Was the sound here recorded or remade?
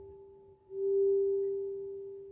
recorded